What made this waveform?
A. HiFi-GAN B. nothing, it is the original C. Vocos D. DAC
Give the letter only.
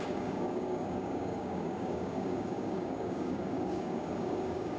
D